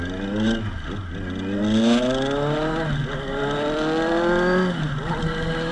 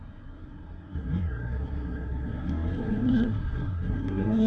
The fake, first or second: second